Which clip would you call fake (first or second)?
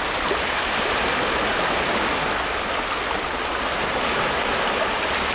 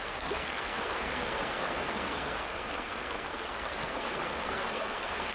second